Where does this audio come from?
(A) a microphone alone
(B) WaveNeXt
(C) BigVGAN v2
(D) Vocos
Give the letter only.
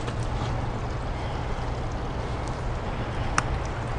A